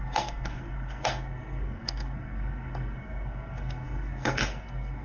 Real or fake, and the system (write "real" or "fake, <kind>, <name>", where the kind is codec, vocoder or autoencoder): fake, codec, SNAC